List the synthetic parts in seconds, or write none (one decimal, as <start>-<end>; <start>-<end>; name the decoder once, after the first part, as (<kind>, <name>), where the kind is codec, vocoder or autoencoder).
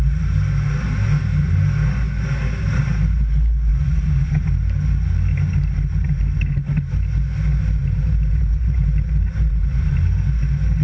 3.7-4.3 (vocoder, BigVGAN v2); 7.8-9.9